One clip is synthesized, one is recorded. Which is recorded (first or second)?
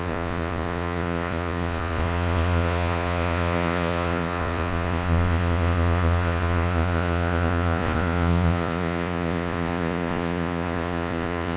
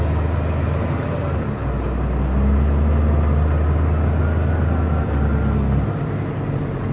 second